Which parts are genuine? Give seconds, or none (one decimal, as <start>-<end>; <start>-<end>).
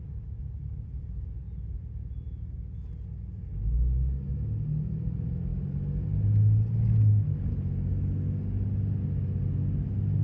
0.0-10.2